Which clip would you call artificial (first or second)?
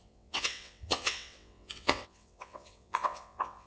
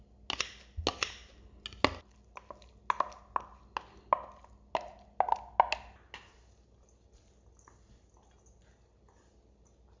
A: first